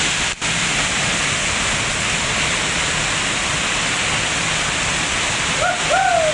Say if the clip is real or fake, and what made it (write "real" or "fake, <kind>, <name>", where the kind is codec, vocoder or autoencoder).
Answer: real